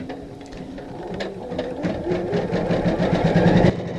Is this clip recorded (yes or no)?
yes